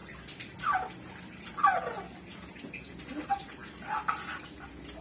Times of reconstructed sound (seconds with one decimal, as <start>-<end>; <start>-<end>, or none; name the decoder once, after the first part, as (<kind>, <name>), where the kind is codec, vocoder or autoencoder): none